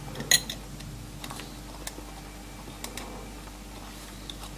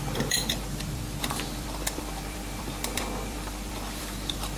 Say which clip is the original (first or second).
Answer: first